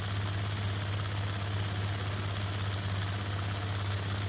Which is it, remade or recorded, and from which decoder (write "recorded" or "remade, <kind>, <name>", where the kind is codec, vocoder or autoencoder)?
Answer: recorded